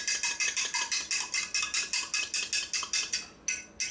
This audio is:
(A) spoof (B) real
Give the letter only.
B